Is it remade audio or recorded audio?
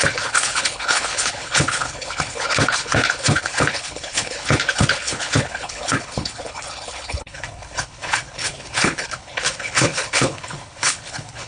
remade